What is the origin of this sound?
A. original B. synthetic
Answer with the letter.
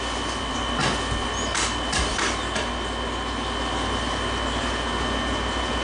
A